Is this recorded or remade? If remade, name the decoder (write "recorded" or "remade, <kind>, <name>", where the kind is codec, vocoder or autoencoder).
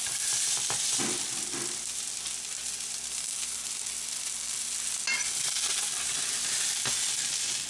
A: recorded